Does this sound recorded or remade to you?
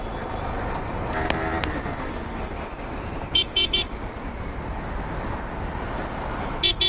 recorded